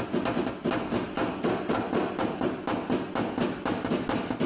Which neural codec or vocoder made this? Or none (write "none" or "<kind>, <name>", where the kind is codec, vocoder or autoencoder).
none